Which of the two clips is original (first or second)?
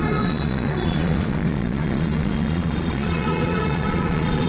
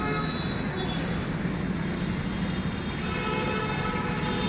second